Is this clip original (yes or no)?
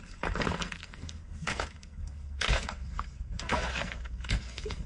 no